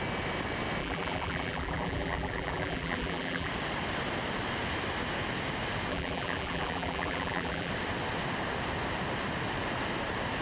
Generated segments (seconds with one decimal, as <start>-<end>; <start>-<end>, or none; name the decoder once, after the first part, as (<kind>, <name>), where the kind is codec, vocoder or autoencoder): 0.8-3.5 (vocoder, BigVGAN v2); 5.9-7.7